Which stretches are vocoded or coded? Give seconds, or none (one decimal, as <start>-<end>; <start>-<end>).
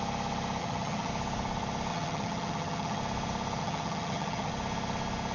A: 0.6-1.1; 1.9-3.0; 3.6-4.5